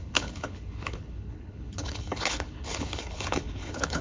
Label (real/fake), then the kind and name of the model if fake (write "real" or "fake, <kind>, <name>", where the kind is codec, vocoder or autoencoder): fake, codec, HILCodec